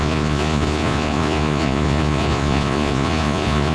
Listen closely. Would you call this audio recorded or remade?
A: remade